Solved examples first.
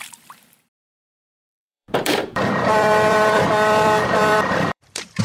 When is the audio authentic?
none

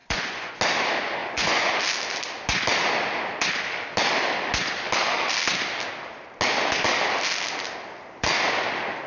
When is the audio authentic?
0.5-1.2; 1.8-9.1

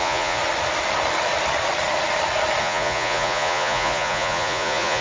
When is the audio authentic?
0.4-2.6

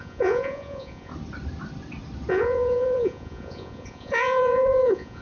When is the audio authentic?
1.1-2.3